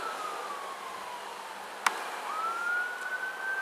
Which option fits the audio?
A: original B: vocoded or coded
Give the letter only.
A